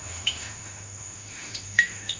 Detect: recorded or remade remade